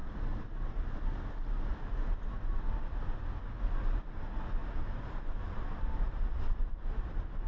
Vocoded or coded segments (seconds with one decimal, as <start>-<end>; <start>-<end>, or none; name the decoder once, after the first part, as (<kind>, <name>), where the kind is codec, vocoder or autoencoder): 4.6-6.8 (vocoder, BigVGAN v2)